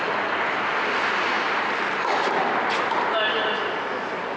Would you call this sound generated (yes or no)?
no